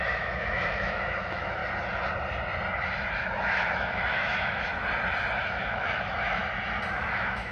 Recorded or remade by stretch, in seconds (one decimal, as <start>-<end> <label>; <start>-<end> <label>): 0.0-1.6 remade; 1.6-3.1 recorded; 3.1-4.7 remade; 4.7-5.4 recorded; 5.4-6.4 remade; 6.4-6.9 recorded; 6.9-7.5 remade